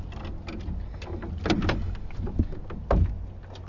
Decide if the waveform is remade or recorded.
recorded